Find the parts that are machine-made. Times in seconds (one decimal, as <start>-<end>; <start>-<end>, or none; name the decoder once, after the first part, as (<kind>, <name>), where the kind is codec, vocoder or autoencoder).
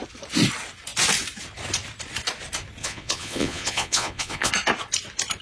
2.8-4.5 (vocoder, Vocos)